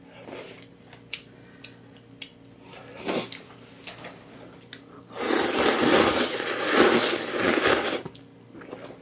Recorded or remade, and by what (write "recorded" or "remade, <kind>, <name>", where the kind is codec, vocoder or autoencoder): recorded